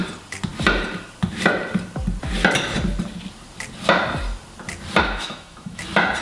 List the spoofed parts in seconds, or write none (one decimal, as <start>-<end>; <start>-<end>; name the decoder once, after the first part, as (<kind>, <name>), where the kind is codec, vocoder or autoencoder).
5.0-5.8 (autoencoder, DAC-VAE)